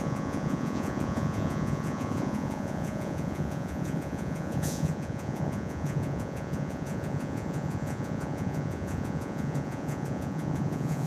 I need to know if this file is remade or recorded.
remade